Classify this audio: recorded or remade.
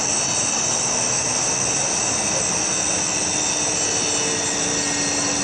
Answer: recorded